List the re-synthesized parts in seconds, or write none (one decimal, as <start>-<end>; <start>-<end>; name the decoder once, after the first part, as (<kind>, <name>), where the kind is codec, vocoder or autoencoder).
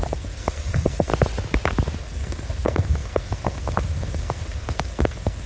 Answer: 0.0-1.1 (codec, SNAC); 2.0-5.5